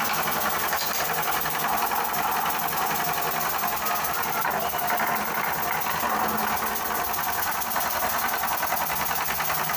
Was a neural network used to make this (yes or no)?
no